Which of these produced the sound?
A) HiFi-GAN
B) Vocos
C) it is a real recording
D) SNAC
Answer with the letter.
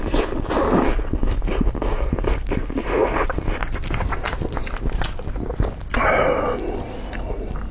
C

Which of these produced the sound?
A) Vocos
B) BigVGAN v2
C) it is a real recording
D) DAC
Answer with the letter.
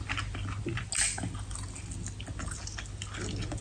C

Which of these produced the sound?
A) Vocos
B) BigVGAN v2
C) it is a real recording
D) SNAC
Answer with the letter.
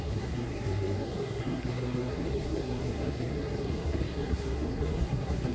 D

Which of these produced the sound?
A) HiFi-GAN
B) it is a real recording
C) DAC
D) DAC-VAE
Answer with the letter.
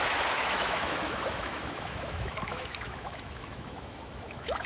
D